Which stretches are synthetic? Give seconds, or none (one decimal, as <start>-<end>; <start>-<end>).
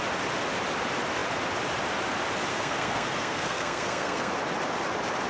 2.5-4.3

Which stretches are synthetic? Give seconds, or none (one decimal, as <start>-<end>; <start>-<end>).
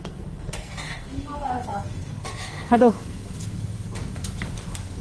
0.0-5.0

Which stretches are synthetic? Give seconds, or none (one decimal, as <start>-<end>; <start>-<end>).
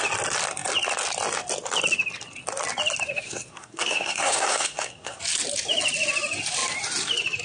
3.1-5.2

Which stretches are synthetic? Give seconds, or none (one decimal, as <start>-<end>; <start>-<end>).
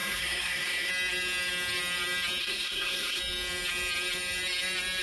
0.0-0.9; 2.4-3.2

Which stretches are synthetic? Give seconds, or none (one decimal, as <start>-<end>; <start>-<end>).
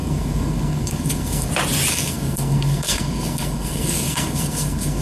0.0-1.5; 1.9-5.0